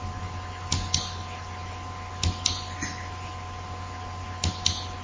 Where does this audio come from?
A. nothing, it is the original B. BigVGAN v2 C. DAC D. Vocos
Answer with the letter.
A